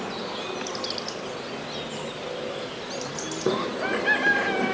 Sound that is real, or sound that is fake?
real